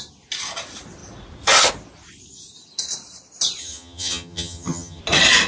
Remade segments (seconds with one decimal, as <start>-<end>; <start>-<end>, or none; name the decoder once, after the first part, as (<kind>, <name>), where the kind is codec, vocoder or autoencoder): 3.6-5.0 (vocoder, HiFi-GAN)